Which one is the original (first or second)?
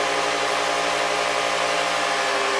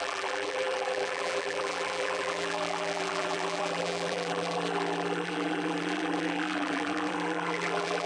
first